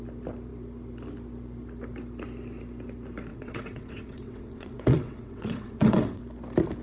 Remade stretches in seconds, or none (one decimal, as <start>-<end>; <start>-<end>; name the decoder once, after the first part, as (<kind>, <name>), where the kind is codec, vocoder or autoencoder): 3.3-6.2 (vocoder, WaveNeXt)